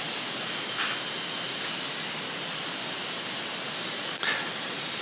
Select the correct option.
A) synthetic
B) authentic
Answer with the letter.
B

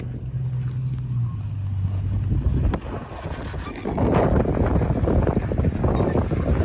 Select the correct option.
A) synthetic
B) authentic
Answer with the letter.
B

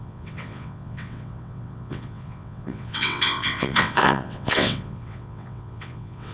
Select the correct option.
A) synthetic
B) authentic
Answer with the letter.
A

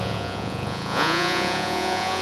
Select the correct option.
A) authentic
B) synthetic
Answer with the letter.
B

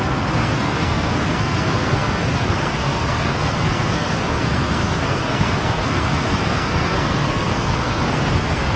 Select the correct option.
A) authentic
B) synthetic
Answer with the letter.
B